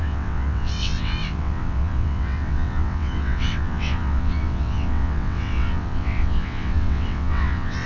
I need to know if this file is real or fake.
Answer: fake